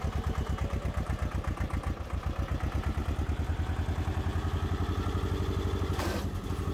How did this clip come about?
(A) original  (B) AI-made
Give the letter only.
A